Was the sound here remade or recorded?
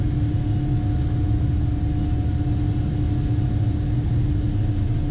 recorded